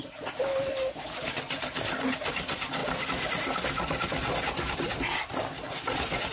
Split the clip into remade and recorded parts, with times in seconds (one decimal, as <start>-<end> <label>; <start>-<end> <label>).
0.0-6.3 recorded